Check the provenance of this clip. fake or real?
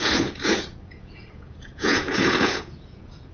fake